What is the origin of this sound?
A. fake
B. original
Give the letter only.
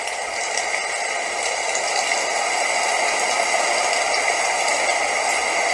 B